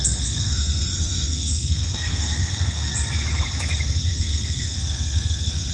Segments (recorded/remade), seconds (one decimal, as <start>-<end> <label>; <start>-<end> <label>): 0.0-2.9 remade; 2.9-4.2 recorded; 4.2-5.7 remade